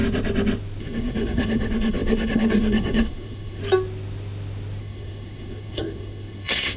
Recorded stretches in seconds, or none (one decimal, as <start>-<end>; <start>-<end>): 0.0-0.8; 3.6-4.8